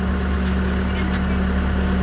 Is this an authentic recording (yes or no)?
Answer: yes